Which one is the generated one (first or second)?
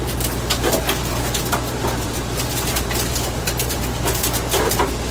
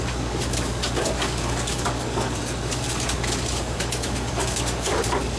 second